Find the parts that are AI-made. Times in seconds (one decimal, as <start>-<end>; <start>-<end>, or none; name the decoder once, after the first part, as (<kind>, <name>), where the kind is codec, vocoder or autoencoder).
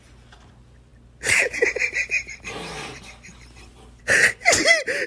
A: none